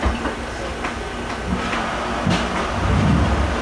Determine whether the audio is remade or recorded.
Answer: recorded